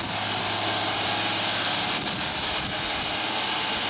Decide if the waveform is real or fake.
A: real